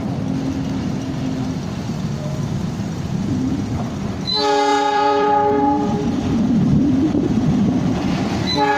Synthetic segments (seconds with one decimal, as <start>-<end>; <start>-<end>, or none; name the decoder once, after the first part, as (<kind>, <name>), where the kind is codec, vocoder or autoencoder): 4.7-8.3 (vocoder, BigVGAN v2)

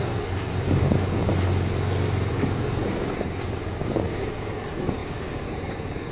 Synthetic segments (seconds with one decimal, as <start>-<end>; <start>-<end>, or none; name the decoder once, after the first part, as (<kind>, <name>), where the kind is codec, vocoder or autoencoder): 0.0-1.3 (codec, DAC); 2.3-6.1